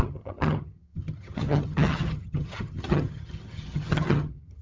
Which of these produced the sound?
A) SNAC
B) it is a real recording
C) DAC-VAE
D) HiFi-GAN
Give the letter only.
D